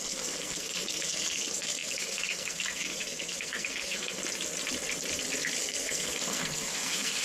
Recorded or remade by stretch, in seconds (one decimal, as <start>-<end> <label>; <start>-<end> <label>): 0.0-4.2 remade; 4.2-5.6 recorded; 5.6-7.2 remade